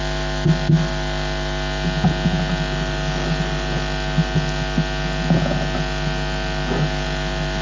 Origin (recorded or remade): recorded